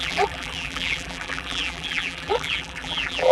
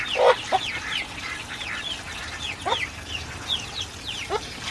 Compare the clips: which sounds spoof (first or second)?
first